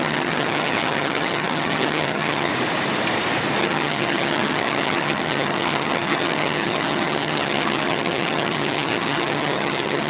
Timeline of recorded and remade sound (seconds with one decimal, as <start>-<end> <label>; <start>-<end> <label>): 0.0-2.5 remade; 2.5-3.6 recorded; 3.6-10.1 remade